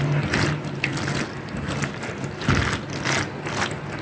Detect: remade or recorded recorded